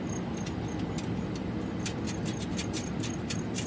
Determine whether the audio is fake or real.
real